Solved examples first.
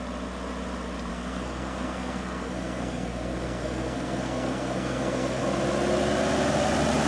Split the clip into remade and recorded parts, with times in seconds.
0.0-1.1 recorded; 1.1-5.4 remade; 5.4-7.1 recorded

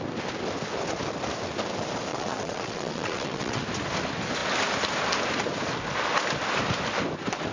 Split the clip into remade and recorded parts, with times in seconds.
0.0-2.1 recorded; 2.1-3.6 remade; 3.6-7.5 recorded